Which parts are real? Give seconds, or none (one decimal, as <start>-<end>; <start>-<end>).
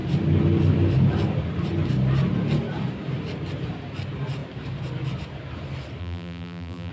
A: 0.0-6.0